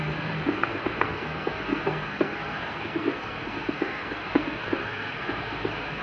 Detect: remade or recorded remade